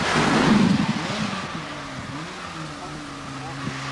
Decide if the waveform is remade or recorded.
recorded